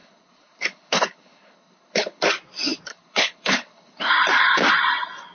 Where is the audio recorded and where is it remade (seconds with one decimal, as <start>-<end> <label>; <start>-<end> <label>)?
0.0-2.2 remade; 2.2-2.9 recorded; 2.9-4.1 remade; 4.1-5.3 recorded